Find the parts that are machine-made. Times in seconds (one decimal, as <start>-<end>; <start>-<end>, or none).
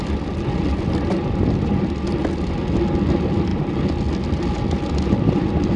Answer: none